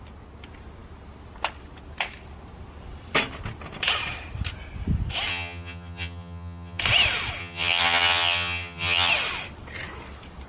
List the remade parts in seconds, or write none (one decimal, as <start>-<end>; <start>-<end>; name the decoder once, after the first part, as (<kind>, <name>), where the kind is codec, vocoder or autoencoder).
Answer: 5.3-6.8 (vocoder, HiFi-GAN); 7.4-9.1